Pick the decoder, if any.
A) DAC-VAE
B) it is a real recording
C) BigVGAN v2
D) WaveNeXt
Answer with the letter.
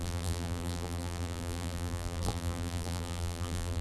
C